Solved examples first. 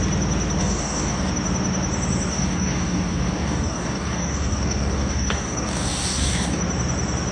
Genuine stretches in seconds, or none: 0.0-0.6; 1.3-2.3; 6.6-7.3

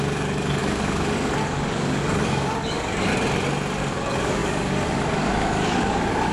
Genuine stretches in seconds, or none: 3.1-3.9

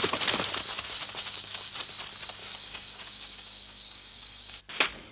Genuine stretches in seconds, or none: 0.0-1.2; 1.7-2.4; 4.6-5.1

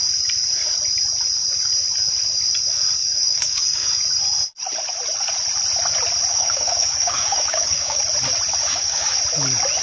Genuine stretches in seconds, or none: 0.0-3.0; 3.9-6.3; 8.0-8.6; 9.2-9.8